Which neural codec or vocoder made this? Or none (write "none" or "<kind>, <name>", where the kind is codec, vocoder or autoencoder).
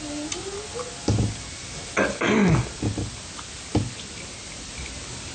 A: none